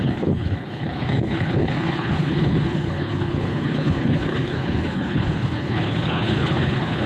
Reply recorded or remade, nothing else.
remade